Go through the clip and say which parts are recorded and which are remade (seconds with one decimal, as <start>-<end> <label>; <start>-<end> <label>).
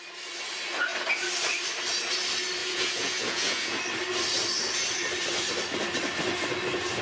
0.0-2.6 recorded; 2.6-3.8 remade; 3.8-7.0 recorded